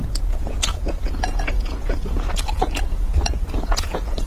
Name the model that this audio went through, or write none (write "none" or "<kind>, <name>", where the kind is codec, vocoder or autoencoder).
vocoder, Vocos